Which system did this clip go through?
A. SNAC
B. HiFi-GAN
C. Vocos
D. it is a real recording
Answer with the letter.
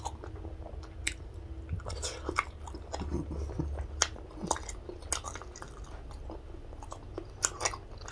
D